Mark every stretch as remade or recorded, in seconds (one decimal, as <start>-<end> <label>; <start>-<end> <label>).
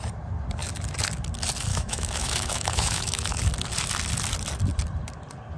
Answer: 0.0-1.7 recorded; 1.7-3.4 remade; 3.4-5.6 recorded